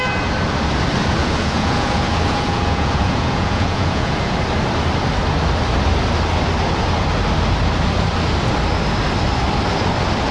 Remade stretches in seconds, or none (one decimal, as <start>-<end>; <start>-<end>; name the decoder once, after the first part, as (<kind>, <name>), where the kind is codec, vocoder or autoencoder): 1.2-4.4 (vocoder, Vocos)